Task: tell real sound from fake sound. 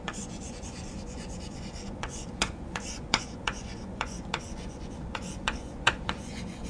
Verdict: fake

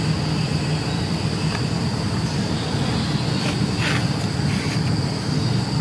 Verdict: real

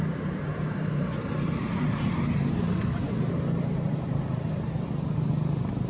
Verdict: fake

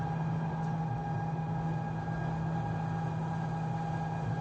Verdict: real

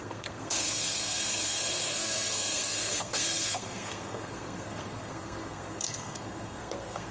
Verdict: fake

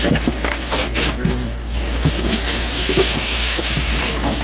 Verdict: fake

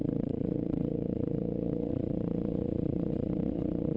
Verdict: fake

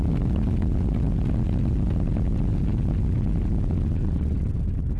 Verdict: real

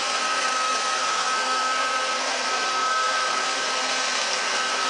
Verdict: fake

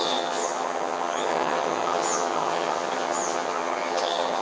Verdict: fake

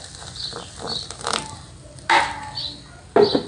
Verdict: real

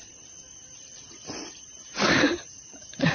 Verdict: fake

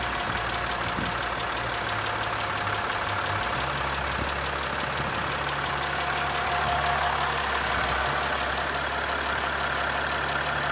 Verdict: real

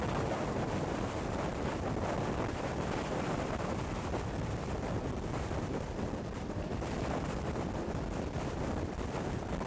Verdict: fake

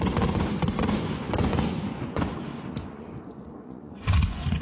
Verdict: fake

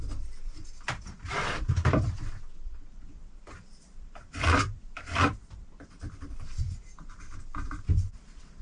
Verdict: fake